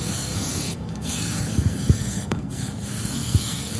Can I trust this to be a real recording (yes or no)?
no